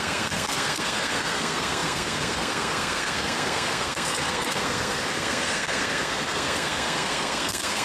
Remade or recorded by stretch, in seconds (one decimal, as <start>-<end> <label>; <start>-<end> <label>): 0.0-7.8 remade